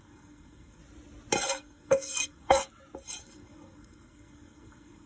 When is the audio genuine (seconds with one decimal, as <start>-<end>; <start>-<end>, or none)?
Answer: 0.8-1.4; 2.6-3.2